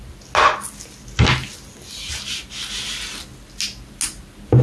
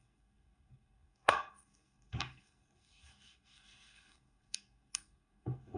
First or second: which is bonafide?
first